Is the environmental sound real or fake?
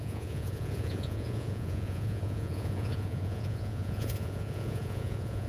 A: fake